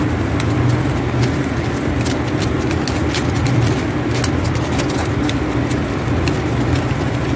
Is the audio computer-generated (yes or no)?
no